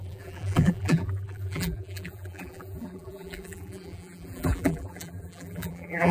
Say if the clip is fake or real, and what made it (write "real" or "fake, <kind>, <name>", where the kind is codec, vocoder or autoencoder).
fake, vocoder, BigVGAN v2